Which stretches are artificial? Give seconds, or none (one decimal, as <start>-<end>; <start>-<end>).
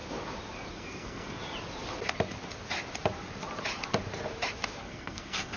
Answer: 0.7-1.4; 4.8-5.6